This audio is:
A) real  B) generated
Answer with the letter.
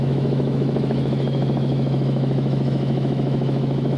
B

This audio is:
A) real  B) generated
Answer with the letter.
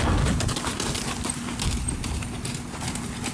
A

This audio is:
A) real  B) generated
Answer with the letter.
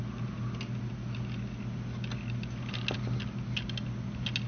A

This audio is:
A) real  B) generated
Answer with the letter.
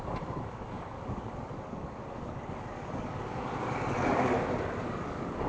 B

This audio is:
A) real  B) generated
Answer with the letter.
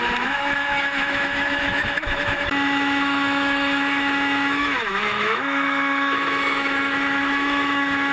B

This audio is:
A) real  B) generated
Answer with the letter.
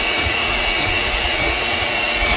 B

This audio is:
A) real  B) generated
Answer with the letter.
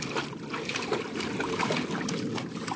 A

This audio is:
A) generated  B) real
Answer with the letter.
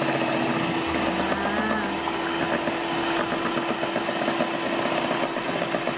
B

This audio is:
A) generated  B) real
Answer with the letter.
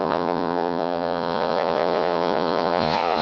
A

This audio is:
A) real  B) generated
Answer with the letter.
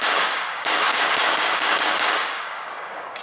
B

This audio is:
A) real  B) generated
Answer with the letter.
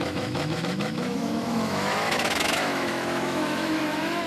B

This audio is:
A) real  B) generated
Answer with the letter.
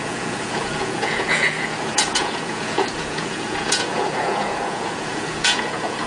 B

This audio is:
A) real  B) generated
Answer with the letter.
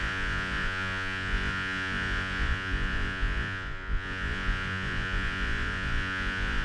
B